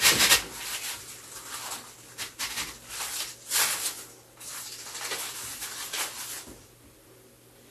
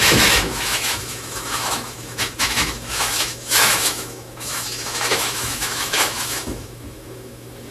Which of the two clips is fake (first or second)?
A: second